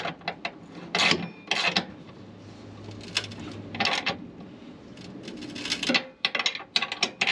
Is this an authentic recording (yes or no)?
yes